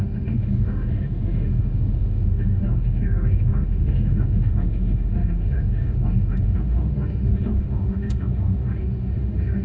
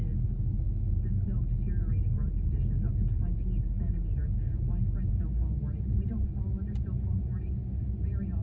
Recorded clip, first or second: second